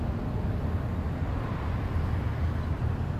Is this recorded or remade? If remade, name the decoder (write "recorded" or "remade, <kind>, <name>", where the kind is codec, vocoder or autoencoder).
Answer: recorded